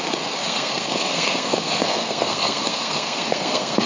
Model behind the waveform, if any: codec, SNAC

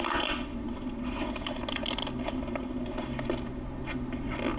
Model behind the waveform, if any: none